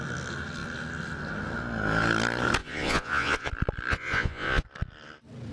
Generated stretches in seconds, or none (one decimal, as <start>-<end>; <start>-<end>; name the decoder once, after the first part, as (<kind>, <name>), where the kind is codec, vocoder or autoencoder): 2.6-3.5 (vocoder, Vocos); 3.9-4.6